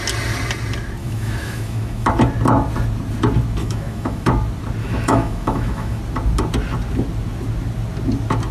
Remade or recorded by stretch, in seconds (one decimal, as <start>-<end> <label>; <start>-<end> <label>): 0.0-1.0 recorded; 1.0-2.1 remade; 2.1-3.6 recorded; 3.6-4.3 remade; 4.3-4.8 recorded; 4.8-6.0 remade; 6.0-8.5 recorded